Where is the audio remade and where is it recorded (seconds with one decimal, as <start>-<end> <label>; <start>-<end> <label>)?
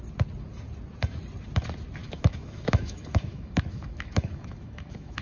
0.0-2.0 recorded; 2.0-5.2 remade